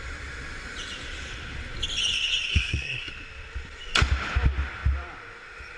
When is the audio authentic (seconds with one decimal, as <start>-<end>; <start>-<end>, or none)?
0.0-2.5; 3.1-5.8